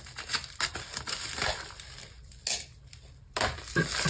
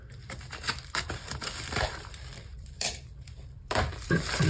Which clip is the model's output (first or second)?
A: second